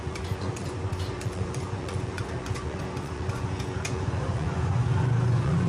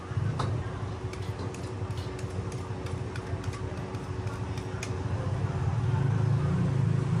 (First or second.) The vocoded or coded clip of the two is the first